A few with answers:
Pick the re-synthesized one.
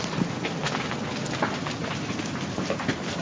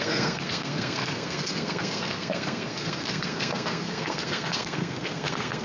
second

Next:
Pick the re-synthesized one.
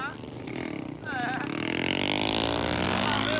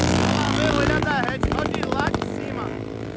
first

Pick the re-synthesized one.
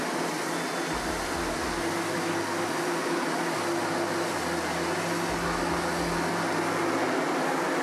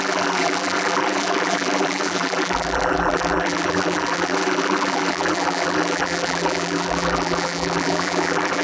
second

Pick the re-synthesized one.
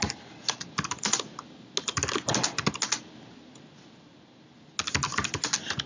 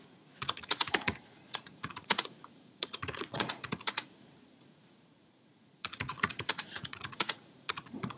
second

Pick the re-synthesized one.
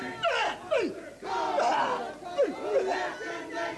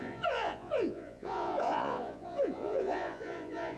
second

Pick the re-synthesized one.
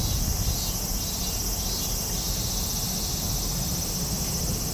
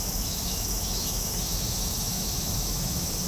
second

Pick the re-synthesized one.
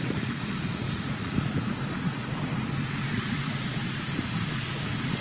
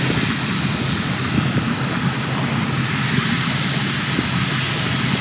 first